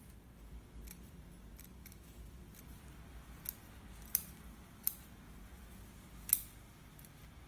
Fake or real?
real